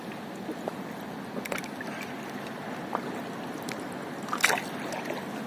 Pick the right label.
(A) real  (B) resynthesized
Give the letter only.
A